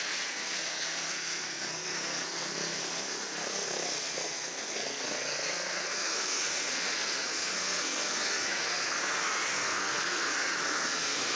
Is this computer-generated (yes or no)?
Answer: yes